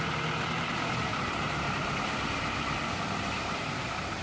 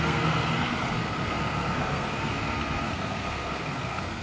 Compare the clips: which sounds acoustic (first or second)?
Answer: first